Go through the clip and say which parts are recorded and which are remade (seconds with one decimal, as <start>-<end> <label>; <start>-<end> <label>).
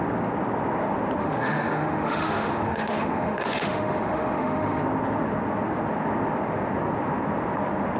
0.0-1.2 recorded; 1.2-4.8 remade; 4.8-8.0 recorded